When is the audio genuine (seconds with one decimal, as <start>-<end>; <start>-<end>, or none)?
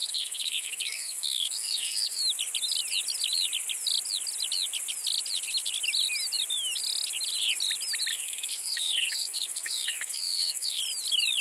2.2-8.1; 10.8-11.4